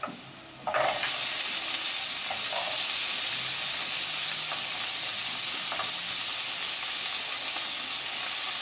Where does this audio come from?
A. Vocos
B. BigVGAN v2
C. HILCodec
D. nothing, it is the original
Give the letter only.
D